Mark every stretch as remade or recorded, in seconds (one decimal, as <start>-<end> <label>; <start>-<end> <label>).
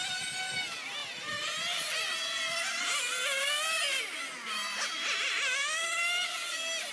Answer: 0.0-6.9 recorded